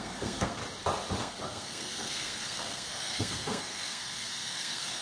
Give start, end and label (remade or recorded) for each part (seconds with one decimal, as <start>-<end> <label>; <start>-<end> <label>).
0.0-0.6 remade; 0.6-1.2 recorded; 1.2-5.0 remade